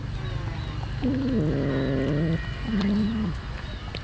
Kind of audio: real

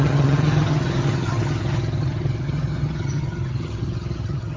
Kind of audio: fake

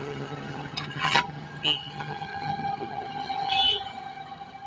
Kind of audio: fake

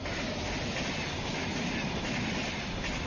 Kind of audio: real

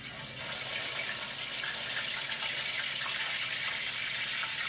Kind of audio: real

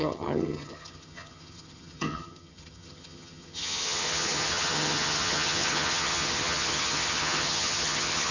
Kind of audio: fake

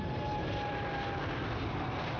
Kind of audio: real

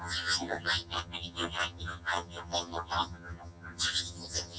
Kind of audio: fake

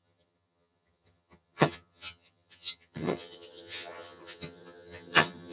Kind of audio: fake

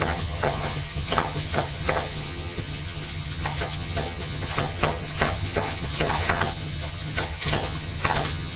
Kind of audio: fake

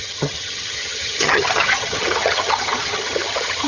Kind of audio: fake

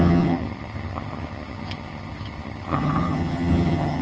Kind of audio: fake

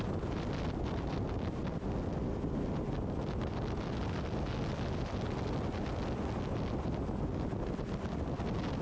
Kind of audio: real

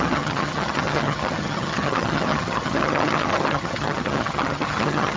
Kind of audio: fake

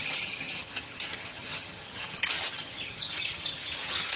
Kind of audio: fake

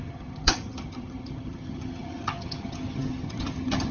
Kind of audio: fake